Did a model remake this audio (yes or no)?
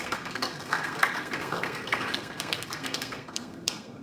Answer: yes